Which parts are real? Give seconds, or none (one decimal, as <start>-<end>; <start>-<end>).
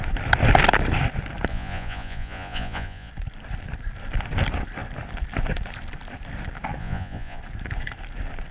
0.0-1.5; 3.1-6.8; 7.4-8.5